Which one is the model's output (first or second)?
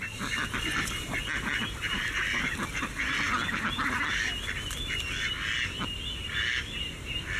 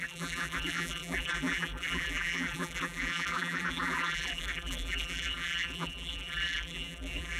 second